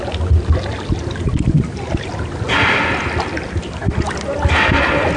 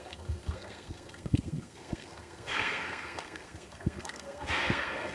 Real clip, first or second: first